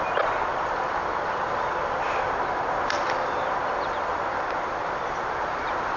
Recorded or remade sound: remade